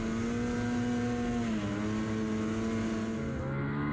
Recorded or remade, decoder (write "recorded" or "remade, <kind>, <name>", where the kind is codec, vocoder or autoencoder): recorded